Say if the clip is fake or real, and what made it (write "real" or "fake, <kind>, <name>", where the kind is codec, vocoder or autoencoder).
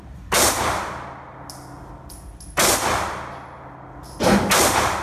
real